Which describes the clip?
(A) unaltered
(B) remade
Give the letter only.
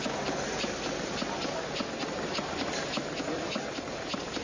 A